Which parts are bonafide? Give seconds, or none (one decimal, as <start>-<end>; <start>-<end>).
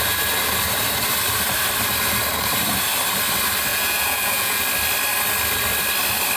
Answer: 0.0-3.7; 4.6-6.4